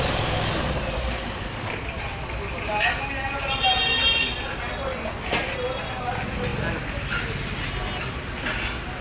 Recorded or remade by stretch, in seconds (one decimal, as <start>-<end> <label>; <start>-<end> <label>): 0.0-9.0 recorded